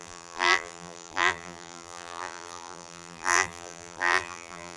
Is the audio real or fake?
fake